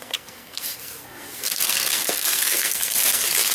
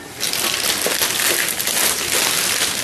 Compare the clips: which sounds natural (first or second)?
second